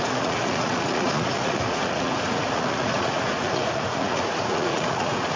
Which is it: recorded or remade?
remade